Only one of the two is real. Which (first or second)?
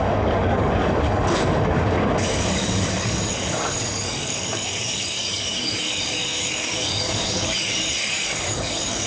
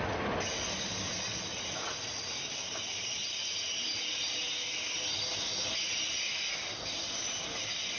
second